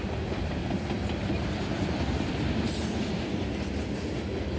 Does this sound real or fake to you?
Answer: fake